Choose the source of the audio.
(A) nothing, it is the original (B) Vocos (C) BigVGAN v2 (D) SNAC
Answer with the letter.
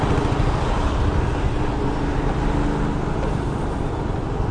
A